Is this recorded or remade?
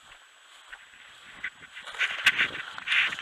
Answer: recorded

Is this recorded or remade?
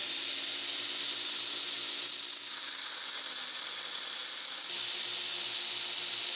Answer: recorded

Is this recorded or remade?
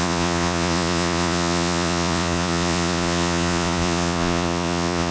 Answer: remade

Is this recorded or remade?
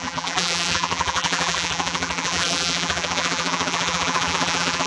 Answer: remade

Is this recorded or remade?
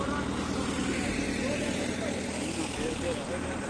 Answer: recorded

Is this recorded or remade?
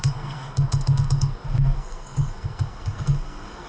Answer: remade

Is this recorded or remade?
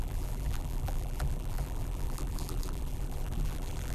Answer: remade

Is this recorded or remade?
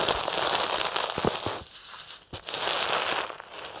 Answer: recorded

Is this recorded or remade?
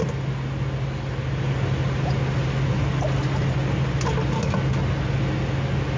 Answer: recorded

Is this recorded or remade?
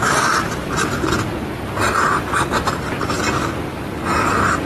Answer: recorded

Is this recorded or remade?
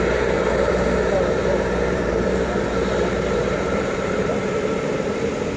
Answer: remade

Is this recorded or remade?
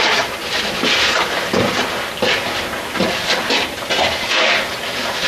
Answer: recorded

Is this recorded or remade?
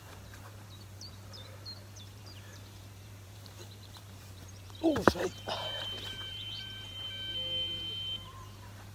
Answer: remade